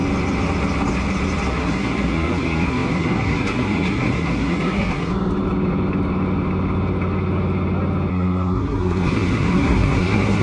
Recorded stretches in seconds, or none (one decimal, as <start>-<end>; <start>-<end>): 0.0-1.5; 5.1-8.1